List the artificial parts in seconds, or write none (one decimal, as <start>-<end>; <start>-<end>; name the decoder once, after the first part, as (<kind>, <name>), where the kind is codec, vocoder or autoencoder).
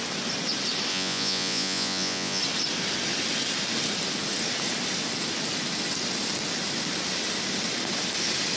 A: 0.9-2.4 (vocoder, Vocos)